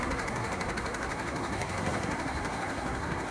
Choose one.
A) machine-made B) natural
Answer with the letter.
A